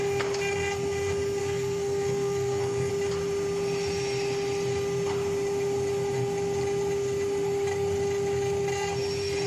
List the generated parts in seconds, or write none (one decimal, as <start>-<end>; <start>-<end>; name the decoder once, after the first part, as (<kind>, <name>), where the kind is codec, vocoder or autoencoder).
1.4-2.9 (codec, SNAC)